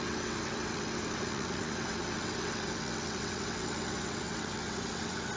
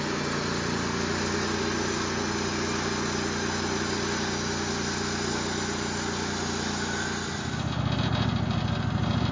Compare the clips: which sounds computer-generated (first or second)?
first